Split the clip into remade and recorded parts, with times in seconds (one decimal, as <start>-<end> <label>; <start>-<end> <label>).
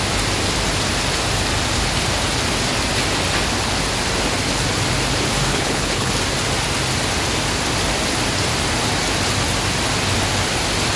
0.0-5.5 recorded; 5.5-6.1 remade; 6.1-11.0 recorded